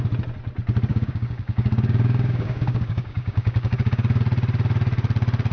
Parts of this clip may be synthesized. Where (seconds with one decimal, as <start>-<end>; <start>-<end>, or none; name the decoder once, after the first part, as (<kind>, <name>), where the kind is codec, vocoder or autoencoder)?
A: 0.9-4.2 (codec, DAC)